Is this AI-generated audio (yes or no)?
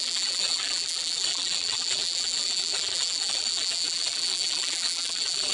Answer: yes